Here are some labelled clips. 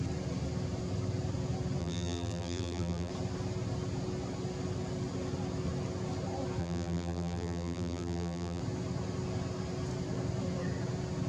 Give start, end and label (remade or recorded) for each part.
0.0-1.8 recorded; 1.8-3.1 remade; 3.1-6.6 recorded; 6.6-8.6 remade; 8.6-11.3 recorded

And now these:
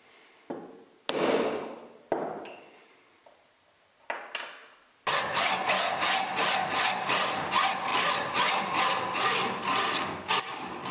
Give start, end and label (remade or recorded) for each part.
0.0-7.9 recorded; 7.9-8.8 remade; 8.8-10.9 recorded

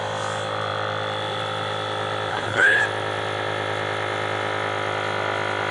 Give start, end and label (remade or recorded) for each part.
0.0-2.3 recorded; 2.3-2.8 remade; 2.8-5.7 recorded

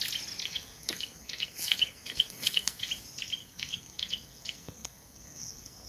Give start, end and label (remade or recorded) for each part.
0.0-0.4 recorded; 0.4-2.9 remade; 2.9-3.4 recorded; 3.4-5.9 remade

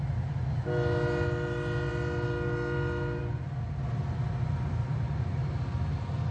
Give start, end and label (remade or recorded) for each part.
0.0-6.3 recorded

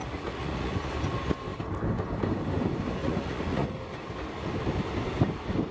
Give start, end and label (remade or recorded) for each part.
0.0-0.9 remade; 0.9-3.0 recorded; 3.0-3.7 remade; 3.7-5.7 recorded

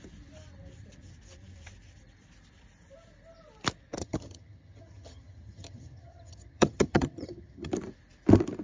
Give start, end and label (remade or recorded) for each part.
0.0-4.0 recorded; 4.0-7.7 remade; 7.7-8.6 recorded